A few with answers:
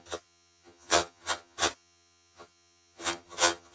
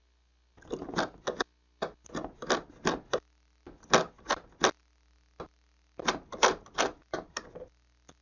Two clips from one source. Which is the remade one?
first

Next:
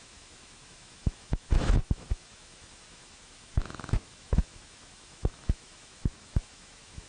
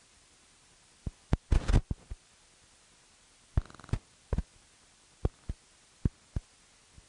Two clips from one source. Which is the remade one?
first